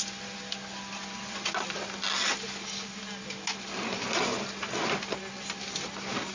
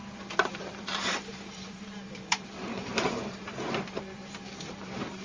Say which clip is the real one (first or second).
first